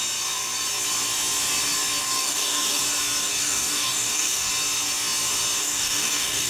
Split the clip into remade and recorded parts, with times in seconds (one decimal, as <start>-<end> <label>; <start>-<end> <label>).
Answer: 0.0-2.0 recorded; 2.0-2.8 remade; 2.8-3.2 recorded; 3.2-4.5 remade; 4.5-5.6 recorded; 5.6-6.5 remade